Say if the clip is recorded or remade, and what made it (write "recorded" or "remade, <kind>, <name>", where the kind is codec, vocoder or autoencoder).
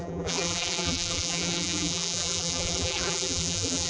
remade, vocoder, BigVGAN v2